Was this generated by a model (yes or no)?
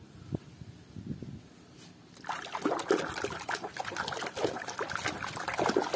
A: no